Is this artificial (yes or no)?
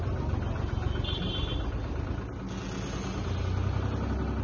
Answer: no